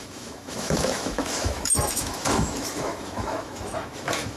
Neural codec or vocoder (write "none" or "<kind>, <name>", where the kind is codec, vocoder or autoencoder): autoencoder, DAC-VAE